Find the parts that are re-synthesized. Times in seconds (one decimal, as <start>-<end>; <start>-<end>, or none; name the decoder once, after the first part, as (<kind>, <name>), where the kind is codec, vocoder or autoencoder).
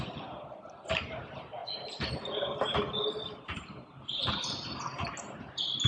none